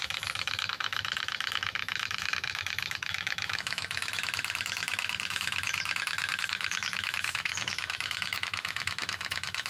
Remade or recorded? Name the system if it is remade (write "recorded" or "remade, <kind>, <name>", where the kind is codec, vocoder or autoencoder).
remade, autoencoder, DAC-VAE